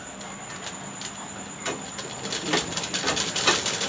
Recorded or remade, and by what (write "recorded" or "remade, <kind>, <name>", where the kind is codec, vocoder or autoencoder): recorded